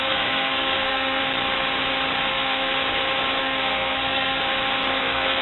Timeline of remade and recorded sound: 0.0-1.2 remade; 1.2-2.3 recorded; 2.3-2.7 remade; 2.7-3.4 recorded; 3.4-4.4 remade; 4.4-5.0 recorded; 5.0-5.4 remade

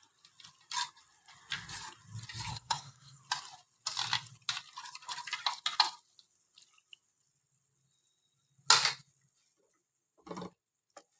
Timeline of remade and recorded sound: 0.0-2.5 recorded; 2.5-3.2 remade; 3.2-11.2 recorded